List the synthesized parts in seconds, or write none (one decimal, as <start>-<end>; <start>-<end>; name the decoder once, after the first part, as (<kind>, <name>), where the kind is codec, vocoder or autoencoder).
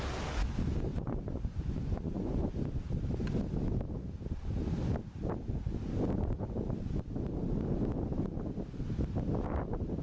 0.9-2.4 (vocoder, Vocos)